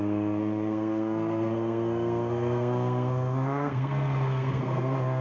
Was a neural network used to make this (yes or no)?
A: yes